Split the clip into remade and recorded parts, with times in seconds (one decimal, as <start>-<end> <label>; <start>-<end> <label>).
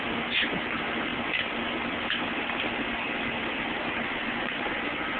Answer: 0.0-4.2 recorded; 4.2-4.8 remade; 4.8-5.2 recorded